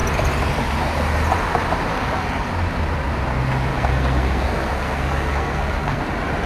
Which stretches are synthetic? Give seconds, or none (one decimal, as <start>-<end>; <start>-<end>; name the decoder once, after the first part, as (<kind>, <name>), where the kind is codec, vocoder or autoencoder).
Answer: 1.9-2.5 (codec, SNAC); 3.7-6.0